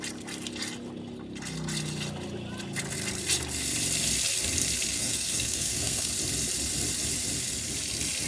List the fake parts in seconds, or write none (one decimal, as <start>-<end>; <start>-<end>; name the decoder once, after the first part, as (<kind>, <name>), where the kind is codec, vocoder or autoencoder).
4.9-6.1 (codec, SNAC)